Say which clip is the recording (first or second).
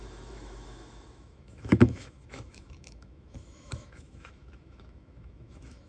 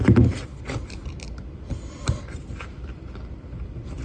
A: second